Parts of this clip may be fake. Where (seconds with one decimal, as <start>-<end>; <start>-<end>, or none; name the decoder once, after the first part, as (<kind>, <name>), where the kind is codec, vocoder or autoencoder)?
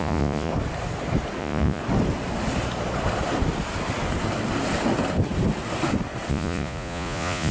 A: 0.0-0.5 (vocoder, Vocos); 1.4-1.8; 6.3-7.5